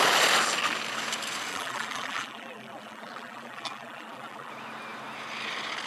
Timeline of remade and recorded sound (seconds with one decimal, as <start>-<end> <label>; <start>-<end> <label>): 0.0-1.5 recorded; 1.5-4.5 remade; 4.5-5.9 recorded